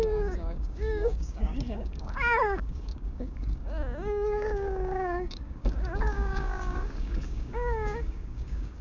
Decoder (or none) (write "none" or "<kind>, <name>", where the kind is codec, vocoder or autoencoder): codec, DAC